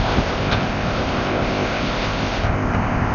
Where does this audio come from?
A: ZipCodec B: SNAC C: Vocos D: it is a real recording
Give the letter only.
A